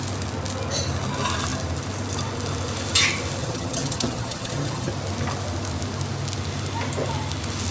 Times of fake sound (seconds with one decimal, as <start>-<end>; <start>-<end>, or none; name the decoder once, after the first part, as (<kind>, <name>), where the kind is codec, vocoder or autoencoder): 3.4-4.9 (vocoder, HiFi-GAN)